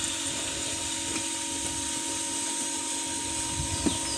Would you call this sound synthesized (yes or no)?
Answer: no